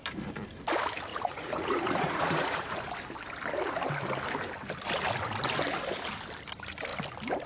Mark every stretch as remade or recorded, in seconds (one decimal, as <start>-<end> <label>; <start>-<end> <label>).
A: 0.0-1.1 recorded; 1.1-2.9 remade; 2.9-7.5 recorded